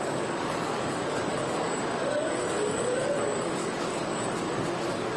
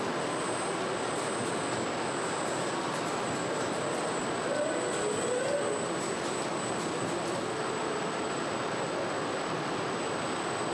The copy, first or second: first